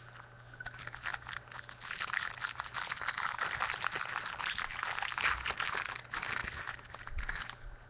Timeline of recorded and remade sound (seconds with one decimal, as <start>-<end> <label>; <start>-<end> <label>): 0.0-7.9 recorded